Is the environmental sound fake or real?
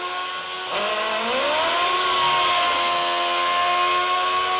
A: real